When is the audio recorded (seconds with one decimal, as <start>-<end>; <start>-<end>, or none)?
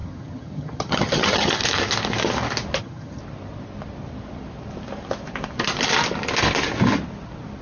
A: 1.6-2.8; 3.2-7.6